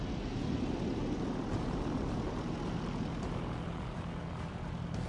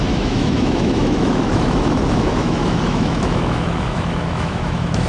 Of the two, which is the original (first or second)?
first